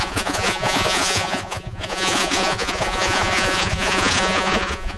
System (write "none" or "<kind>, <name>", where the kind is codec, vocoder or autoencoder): vocoder, Vocos